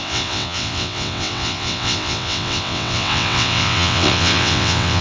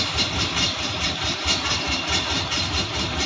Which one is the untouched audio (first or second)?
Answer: second